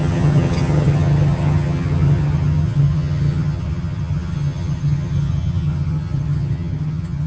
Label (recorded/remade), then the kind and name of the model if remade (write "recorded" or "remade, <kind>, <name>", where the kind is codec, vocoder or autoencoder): remade, vocoder, HiFi-GAN